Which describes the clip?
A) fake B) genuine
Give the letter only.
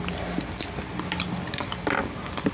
B